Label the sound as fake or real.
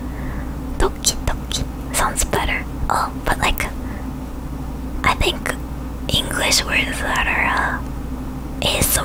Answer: real